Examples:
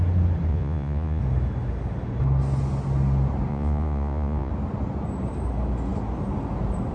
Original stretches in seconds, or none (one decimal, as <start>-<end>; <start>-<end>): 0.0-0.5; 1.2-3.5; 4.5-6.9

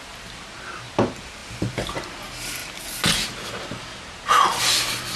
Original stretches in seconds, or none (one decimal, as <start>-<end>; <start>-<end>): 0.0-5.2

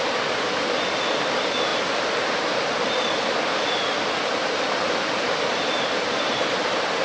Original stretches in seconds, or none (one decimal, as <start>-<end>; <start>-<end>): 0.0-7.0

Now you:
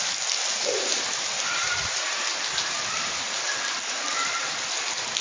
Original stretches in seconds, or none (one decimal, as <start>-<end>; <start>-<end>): 0.0-0.6; 3.7-5.2

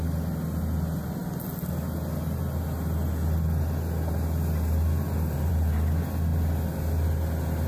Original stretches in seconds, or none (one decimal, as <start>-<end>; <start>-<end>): 0.0-7.7